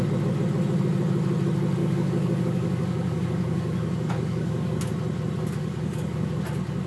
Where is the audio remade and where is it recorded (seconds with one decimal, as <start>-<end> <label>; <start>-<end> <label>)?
0.0-1.8 recorded; 1.8-4.9 remade; 4.9-5.6 recorded; 5.6-6.3 remade; 6.3-6.9 recorded